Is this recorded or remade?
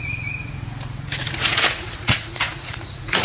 remade